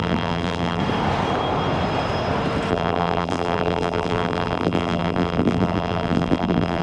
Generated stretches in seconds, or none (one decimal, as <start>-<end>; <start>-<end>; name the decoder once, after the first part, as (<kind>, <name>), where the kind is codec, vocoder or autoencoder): 0.0-0.8 (vocoder, BigVGAN v2); 2.7-6.8

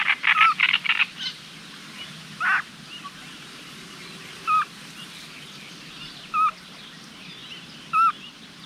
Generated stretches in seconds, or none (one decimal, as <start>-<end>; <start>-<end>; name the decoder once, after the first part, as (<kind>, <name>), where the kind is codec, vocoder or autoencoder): none

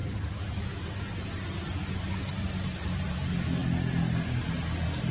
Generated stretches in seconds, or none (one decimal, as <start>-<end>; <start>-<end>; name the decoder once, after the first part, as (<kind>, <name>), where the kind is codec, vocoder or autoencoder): none

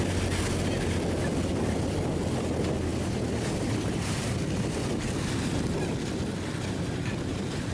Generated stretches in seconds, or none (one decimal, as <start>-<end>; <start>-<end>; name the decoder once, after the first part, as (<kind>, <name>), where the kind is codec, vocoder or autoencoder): 1.5-2.1 (vocoder, BigVGAN v2)

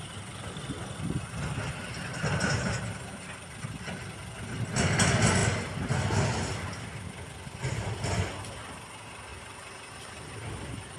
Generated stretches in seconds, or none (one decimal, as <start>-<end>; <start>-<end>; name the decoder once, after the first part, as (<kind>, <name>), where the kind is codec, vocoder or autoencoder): none

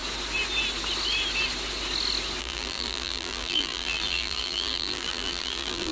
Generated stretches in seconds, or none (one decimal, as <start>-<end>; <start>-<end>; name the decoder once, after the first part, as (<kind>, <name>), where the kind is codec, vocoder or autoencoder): 2.4-5.9 (vocoder, BigVGAN v2)

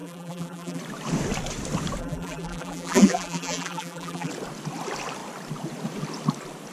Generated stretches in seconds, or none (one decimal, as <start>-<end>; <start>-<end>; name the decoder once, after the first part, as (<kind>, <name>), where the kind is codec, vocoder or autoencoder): 0.0-0.8 (vocoder, BigVGAN v2); 2.0-4.3

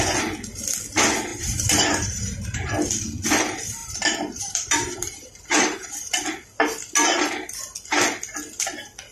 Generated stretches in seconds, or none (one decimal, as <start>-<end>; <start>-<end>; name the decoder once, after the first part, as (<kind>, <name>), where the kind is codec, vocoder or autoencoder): 1.3-2.7 (vocoder, BigVGAN v2); 3.8-6.1